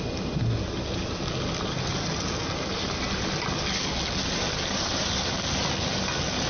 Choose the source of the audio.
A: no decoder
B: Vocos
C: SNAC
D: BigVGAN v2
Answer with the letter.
A